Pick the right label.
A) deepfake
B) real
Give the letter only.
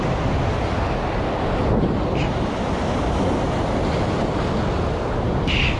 B